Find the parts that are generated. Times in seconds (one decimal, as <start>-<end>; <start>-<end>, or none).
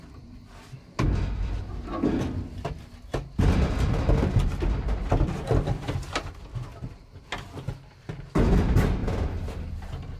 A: none